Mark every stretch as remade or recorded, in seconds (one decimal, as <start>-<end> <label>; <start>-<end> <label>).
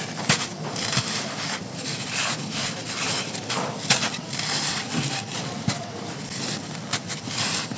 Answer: 0.0-1.6 recorded; 1.6-5.7 remade; 5.7-7.8 recorded